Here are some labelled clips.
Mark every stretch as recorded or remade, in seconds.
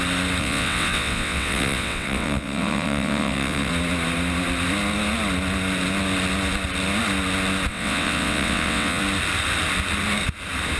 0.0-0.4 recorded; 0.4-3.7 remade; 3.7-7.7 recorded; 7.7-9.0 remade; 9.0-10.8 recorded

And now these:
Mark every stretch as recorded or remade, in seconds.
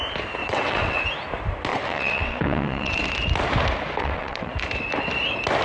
0.0-0.4 recorded; 0.4-1.0 remade; 1.0-1.7 recorded; 1.7-3.0 remade; 3.0-4.0 recorded; 4.0-4.5 remade; 4.5-5.6 recorded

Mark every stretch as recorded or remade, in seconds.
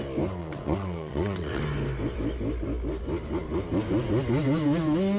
0.0-0.4 recorded; 0.4-1.6 remade; 1.6-5.2 recorded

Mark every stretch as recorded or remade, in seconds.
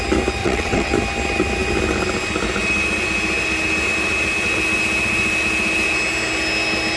0.0-0.4 recorded; 0.4-0.9 remade; 0.9-7.0 recorded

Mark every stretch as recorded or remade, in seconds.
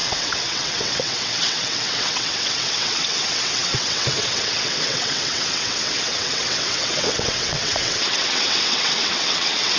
0.0-9.8 remade